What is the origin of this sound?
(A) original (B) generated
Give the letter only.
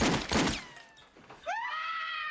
A